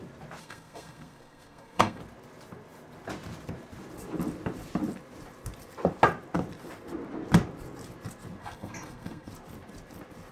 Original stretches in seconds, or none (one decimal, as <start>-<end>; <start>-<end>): 0.0-0.4; 2.0-8.4; 9.3-10.3